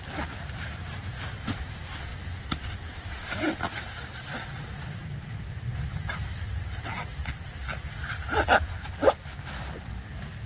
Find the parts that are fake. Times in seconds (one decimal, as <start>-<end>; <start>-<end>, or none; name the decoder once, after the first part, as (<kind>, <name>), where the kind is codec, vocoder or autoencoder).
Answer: none